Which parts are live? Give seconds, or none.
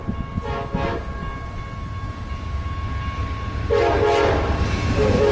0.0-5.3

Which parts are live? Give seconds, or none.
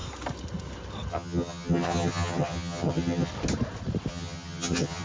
0.0-1.1; 3.3-4.1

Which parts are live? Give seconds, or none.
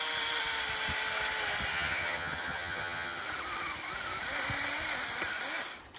0.0-1.7; 3.2-6.0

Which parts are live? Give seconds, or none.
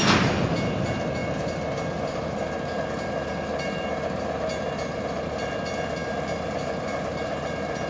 0.0-7.9